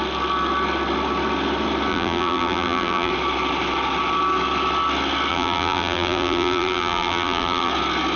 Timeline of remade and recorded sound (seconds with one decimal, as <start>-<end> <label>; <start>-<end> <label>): 0.0-1.9 recorded; 1.9-3.1 remade; 3.1-5.3 recorded; 5.3-7.7 remade; 7.7-8.2 recorded